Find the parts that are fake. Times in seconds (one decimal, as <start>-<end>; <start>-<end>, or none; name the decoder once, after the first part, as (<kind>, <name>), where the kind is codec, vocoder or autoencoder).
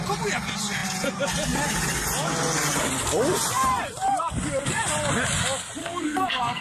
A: 5.8-6.6 (codec, SNAC)